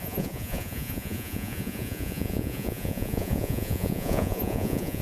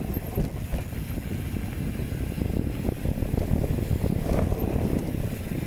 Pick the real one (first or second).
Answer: second